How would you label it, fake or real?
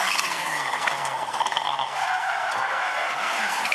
fake